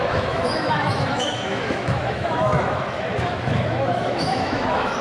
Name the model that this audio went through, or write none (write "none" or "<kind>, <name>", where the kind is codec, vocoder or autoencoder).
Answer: autoencoder, DAC-VAE